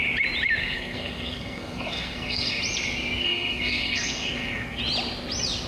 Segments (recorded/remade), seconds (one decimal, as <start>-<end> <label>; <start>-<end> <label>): 0.0-0.6 recorded; 0.6-2.6 remade; 2.6-3.2 recorded; 3.2-4.8 remade; 4.8-5.7 recorded